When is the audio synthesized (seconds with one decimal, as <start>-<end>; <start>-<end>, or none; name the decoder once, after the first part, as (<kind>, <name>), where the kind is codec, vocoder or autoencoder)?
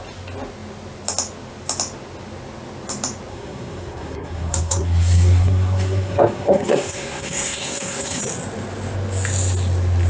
3.3-8.2 (codec, SNAC)